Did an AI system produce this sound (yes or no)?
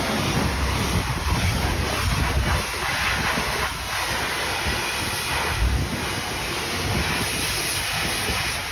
no